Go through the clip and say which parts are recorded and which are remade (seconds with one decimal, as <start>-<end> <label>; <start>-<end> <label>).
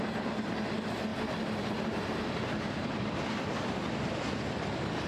0.0-1.1 recorded; 1.1-4.2 remade; 4.2-5.1 recorded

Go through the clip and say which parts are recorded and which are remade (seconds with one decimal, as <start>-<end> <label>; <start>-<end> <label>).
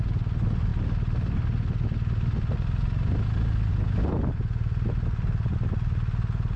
0.0-6.6 recorded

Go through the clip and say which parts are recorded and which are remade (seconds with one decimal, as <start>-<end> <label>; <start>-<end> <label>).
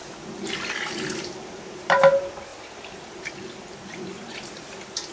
0.0-1.2 recorded; 1.2-2.5 remade; 2.5-3.8 recorded; 3.8-5.1 remade